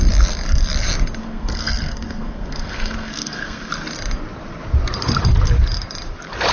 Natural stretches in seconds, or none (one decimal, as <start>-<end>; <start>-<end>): 0.0-1.2; 3.7-6.5